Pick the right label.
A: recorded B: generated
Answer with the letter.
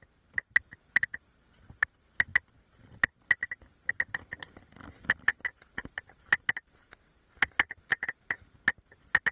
A